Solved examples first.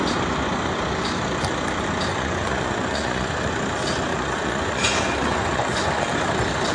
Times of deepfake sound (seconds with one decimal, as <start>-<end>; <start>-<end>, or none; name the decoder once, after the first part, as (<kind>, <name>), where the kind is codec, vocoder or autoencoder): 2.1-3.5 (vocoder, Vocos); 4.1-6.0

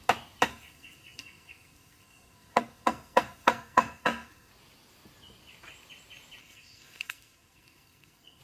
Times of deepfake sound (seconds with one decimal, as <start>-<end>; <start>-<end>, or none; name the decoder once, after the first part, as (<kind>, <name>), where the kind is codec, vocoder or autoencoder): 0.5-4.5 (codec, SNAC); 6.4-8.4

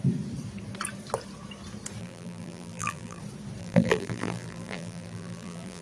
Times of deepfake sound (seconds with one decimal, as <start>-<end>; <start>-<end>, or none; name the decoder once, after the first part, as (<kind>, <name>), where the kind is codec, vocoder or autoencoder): 2.0-3.2 (vocoder, BigVGAN v2); 3.6-5.8

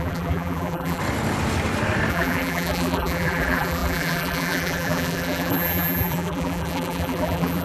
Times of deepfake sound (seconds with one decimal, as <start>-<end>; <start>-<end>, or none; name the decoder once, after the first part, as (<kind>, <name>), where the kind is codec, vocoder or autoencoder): 0.0-1.0 (vocoder, BigVGAN v2); 2.1-7.6

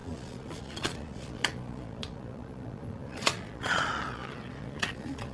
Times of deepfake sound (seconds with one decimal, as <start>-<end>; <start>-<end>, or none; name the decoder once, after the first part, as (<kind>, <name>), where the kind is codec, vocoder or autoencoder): 0.0-5.3 (vocoder, Vocos)